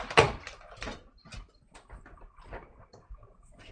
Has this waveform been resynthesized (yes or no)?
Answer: no